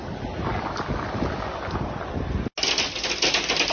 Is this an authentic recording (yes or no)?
yes